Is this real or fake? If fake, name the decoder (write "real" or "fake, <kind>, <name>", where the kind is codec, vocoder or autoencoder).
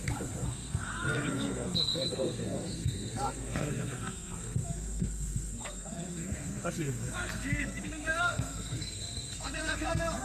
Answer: fake, codec, SNAC